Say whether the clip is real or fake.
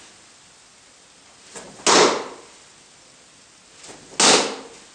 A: real